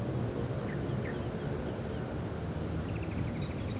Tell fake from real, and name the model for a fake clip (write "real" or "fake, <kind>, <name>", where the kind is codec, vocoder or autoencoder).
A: real